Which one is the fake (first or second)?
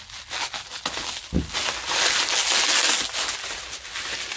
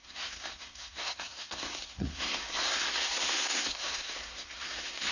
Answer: second